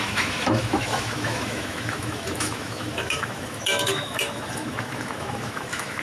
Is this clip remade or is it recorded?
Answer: remade